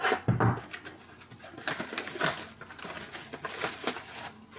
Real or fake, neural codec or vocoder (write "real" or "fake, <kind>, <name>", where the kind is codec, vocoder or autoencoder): real